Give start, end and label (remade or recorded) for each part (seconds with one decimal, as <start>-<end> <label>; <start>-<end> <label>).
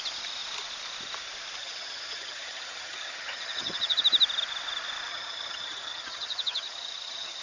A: 0.0-1.6 recorded; 1.6-4.0 remade; 4.0-5.1 recorded; 5.1-7.4 remade